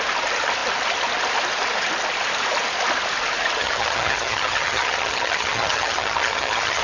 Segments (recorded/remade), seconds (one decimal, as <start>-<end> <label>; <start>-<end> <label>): 0.0-3.6 recorded; 3.6-6.8 remade